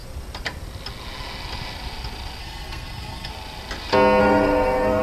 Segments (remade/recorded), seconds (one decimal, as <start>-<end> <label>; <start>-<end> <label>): 0.0-2.4 recorded; 2.4-3.3 remade; 3.3-4.2 recorded; 4.2-5.0 remade